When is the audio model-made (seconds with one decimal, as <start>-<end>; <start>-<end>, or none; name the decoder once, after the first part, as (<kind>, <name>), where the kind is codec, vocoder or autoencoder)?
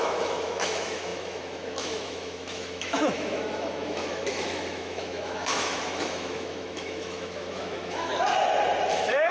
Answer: 0.0-8.1 (autoencoder, DAC-VAE); 8.9-9.3